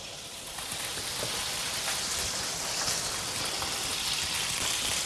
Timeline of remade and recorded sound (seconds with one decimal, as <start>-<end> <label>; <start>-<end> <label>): 0.0-3.9 remade; 3.9-4.6 recorded; 4.6-5.1 remade